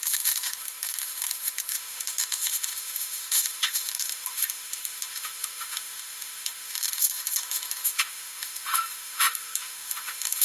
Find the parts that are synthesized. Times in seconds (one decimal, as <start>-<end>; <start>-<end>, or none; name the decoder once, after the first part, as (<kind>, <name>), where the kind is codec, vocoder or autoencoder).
0.0-10.4 (autoencoder, DAC-VAE)